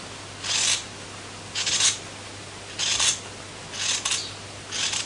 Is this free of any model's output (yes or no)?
yes